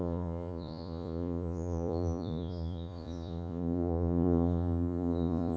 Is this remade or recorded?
remade